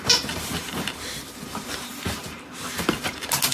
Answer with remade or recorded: remade